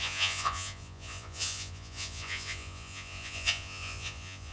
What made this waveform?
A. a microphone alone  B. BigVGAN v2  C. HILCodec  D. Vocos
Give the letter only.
D